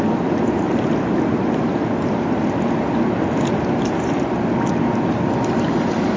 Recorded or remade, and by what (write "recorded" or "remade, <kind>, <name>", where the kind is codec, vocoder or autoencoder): recorded